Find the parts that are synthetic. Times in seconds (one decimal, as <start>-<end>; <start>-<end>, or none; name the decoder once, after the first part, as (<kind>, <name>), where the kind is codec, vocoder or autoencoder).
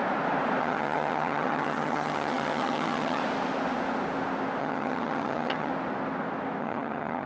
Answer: 0.6-3.2 (vocoder, HiFi-GAN); 4.6-5.7; 6.6-7.3